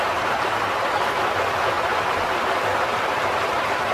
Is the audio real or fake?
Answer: real